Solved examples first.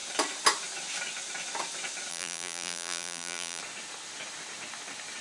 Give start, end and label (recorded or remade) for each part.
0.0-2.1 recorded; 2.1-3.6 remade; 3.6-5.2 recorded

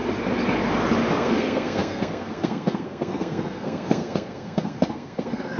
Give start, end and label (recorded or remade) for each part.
0.0-1.1 recorded; 1.1-5.6 remade

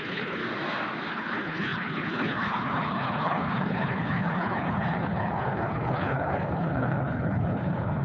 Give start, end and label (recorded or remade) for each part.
0.0-0.4 remade; 0.4-1.1 recorded; 1.1-8.0 remade

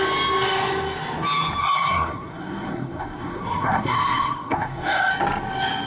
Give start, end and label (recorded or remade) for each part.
0.0-1.6 recorded; 1.6-5.1 remade; 5.1-5.9 recorded

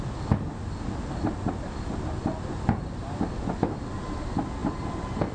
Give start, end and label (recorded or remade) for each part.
0.0-4.6 recorded; 4.6-5.3 remade

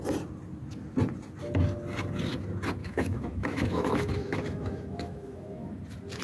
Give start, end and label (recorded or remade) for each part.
0.0-2.8 recorded; 2.8-5.8 remade; 5.8-6.2 recorded